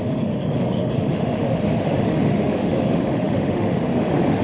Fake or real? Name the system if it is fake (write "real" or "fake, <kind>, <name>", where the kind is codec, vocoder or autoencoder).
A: fake, autoencoder, DAC-VAE